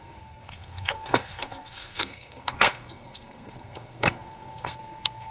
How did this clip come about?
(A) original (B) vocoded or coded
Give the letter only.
B